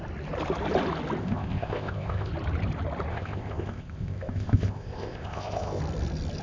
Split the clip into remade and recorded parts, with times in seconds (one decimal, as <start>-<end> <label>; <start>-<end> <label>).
0.0-1.2 recorded; 1.2-2.3 remade; 2.3-3.1 recorded; 3.1-5.8 remade; 5.8-6.4 recorded